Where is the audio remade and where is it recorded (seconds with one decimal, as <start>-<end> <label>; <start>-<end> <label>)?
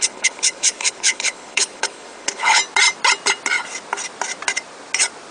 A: 0.0-2.6 remade; 2.6-5.3 recorded